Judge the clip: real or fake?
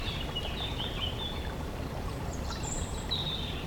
fake